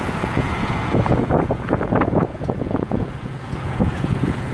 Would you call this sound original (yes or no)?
no